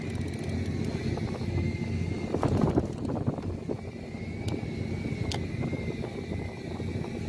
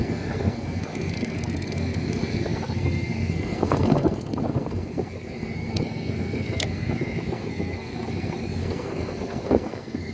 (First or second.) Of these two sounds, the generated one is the second